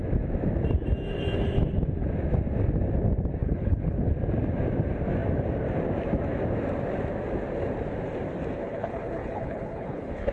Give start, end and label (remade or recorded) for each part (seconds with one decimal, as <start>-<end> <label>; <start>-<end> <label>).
0.0-3.4 recorded; 3.4-4.1 remade; 4.1-8.6 recorded; 8.6-10.3 remade